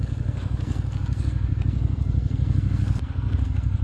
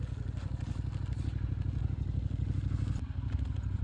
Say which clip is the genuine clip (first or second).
second